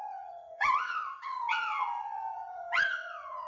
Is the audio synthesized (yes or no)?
yes